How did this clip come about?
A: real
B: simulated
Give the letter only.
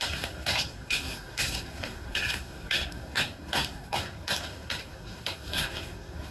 B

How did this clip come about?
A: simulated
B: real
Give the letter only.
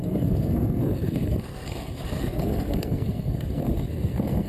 A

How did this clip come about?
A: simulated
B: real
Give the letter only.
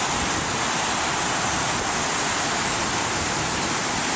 B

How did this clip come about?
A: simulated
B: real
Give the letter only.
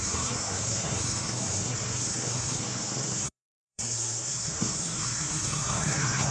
A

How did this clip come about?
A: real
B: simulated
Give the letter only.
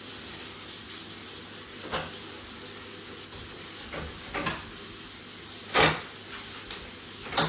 A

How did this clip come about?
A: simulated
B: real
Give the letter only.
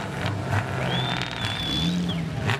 B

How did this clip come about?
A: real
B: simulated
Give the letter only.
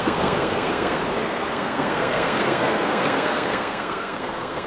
B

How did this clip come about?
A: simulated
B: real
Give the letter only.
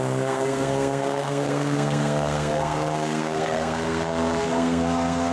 A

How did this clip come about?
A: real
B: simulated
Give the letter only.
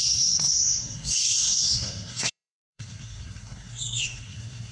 B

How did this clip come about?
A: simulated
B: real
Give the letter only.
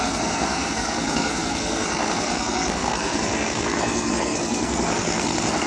A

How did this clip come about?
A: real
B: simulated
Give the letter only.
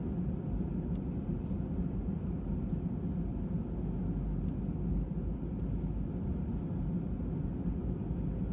A